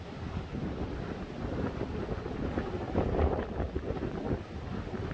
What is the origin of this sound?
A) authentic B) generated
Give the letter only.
A